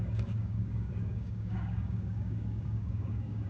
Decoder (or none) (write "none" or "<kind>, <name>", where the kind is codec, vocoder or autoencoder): codec, DAC